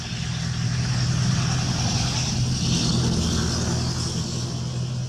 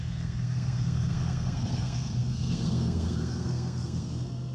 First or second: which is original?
first